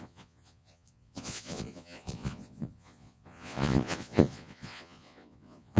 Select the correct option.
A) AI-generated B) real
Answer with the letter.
A